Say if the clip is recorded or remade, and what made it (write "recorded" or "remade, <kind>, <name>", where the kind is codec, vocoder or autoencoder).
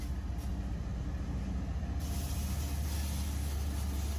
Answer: recorded